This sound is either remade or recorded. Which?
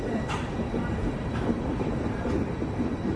remade